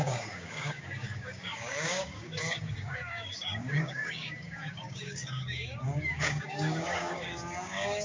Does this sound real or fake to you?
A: fake